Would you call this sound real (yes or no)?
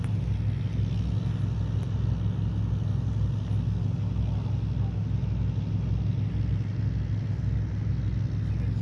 yes